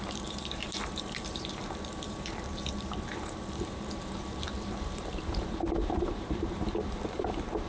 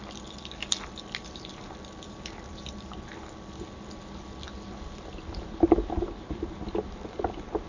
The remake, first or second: first